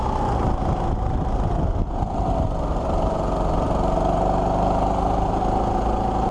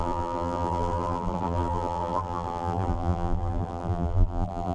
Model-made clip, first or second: second